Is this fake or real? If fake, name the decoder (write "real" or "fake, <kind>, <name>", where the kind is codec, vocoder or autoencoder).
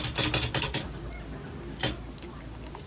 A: real